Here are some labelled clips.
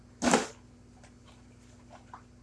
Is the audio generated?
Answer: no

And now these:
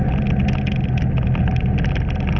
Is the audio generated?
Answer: no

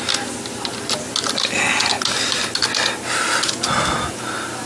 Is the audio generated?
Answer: no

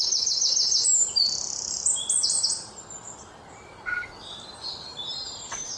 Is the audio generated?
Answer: no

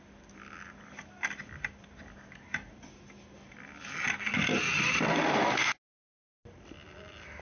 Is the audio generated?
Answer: no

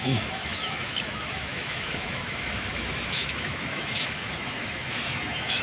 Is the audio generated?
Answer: yes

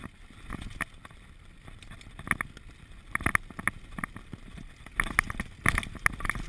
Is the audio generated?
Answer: no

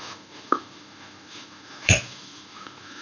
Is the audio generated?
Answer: yes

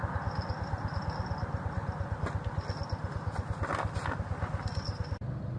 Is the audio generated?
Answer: no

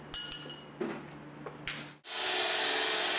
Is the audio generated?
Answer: no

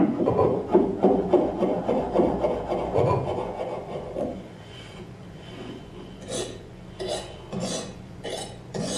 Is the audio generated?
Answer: yes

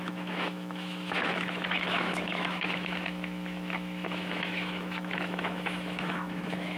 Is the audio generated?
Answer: yes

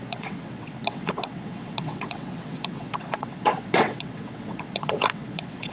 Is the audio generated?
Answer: yes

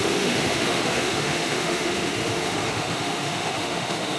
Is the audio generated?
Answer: yes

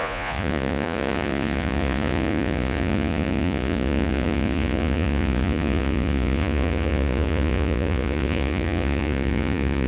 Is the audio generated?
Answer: yes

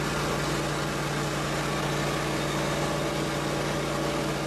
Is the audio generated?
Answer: no